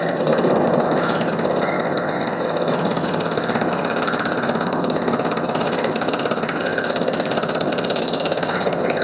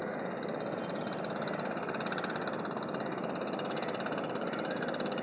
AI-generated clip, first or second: first